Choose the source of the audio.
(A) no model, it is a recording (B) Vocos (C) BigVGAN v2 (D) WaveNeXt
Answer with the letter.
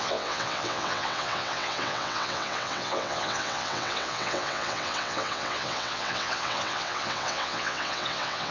D